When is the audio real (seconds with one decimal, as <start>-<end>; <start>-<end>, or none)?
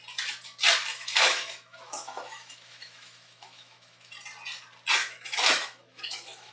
0.0-0.9; 4.1-5.0